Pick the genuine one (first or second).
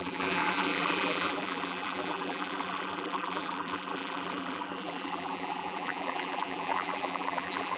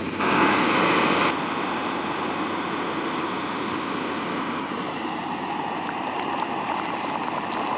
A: second